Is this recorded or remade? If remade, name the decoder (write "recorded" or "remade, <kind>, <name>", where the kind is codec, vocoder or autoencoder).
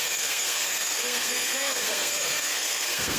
remade, codec, SNAC